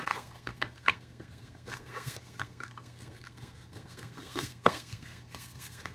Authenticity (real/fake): fake